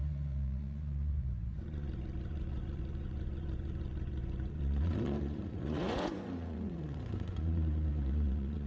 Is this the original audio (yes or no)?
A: no